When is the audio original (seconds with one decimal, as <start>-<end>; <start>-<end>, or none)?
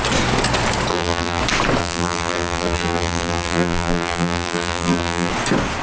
0.0-0.9; 1.4-1.8; 5.3-5.8